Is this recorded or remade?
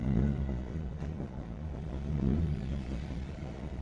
remade